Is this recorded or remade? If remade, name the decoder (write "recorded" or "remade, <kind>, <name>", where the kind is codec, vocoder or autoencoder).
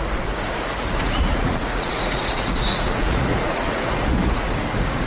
remade, vocoder, Vocos